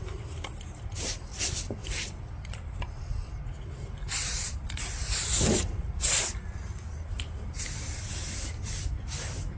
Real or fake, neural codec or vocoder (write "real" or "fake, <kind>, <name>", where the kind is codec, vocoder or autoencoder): real